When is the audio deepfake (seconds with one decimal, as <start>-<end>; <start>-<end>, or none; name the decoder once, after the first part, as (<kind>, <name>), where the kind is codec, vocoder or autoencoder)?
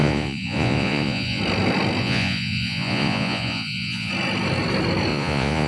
0.0-1.4 (vocoder, Vocos); 2.0-4.1; 5.1-5.7